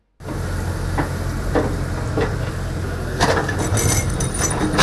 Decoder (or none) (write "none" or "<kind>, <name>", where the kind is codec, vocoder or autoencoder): none